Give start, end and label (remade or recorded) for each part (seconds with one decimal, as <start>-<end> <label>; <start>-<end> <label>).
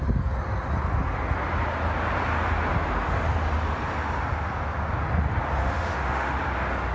0.0-5.6 recorded; 5.6-6.3 remade; 6.3-6.9 recorded